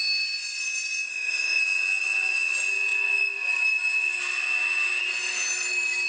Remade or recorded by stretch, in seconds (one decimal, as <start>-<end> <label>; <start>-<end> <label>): 0.0-1.1 recorded; 1.1-1.6 remade; 1.6-6.1 recorded